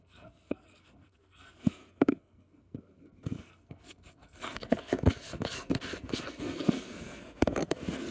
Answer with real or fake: fake